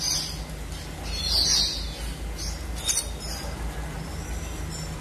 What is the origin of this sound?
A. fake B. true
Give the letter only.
B